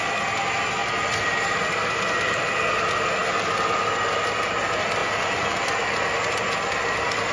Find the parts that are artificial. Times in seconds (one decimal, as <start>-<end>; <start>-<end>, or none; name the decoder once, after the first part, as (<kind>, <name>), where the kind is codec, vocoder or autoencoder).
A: 5.0-5.6 (vocoder, Vocos)